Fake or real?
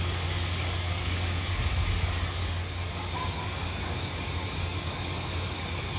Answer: fake